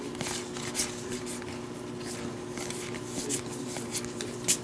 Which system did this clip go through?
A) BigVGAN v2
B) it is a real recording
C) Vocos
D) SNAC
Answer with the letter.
B